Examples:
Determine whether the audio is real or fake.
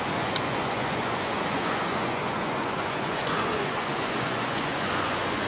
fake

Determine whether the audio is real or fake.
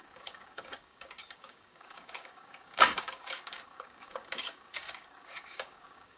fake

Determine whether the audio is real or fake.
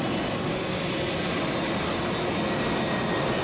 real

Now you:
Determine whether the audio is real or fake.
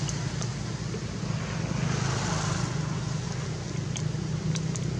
real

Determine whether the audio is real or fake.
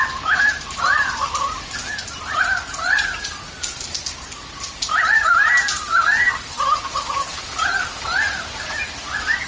fake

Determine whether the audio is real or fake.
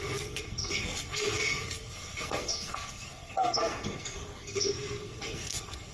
fake